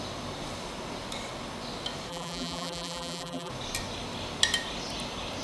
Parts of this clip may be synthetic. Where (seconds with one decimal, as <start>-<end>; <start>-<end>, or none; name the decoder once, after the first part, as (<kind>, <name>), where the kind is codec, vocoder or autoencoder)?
2.1-3.5 (vocoder, BigVGAN v2)